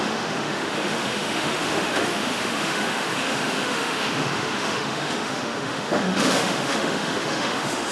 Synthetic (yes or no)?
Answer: yes